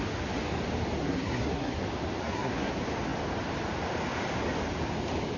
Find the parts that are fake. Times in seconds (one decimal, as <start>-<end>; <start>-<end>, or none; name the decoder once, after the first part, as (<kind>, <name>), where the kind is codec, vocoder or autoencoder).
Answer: 1.0-1.8 (codec, SNAC); 2.2-2.7